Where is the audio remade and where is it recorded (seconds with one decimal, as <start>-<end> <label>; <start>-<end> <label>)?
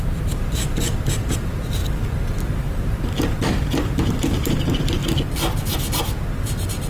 0.0-1.8 remade; 1.8-2.7 recorded; 2.7-5.0 remade; 5.0-6.9 recorded